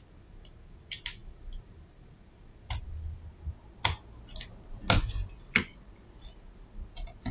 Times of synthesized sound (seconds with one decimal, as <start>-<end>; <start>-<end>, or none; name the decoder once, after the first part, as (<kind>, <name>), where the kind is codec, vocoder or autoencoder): none